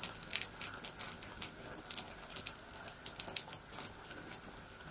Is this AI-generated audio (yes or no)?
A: no